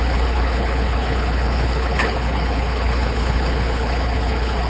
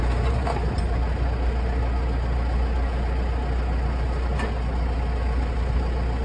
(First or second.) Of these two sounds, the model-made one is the first